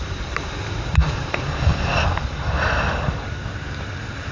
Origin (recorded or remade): remade